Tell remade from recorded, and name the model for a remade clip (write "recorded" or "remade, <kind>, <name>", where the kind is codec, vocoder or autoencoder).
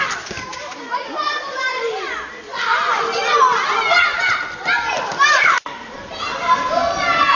recorded